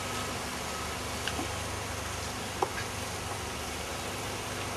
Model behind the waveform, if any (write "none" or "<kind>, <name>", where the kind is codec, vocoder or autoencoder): none